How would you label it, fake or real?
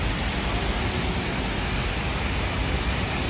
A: real